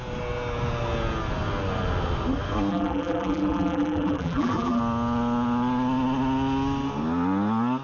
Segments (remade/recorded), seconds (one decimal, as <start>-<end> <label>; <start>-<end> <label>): 0.0-2.7 recorded; 2.7-4.8 remade; 4.8-7.8 recorded